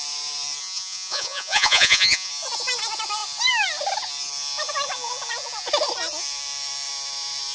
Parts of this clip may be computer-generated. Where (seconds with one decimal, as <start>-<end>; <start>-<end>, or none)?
0.6-2.3